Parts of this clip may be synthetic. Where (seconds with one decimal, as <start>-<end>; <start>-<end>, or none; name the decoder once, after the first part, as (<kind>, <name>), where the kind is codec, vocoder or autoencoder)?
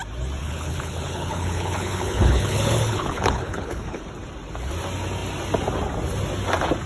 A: 0.4-4.1 (codec, HILCodec)